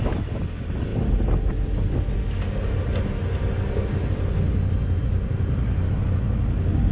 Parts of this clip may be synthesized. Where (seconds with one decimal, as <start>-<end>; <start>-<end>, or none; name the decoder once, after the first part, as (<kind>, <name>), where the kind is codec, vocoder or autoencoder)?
none